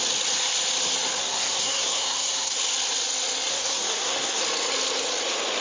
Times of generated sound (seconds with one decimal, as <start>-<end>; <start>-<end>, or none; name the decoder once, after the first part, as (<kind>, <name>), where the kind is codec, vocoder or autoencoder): 1.2-2.5 (codec, SNAC); 3.5-4.4